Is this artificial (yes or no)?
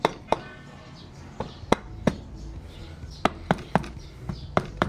yes